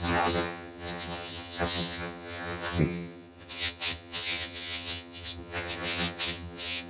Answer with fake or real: fake